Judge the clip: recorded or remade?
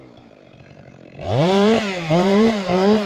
remade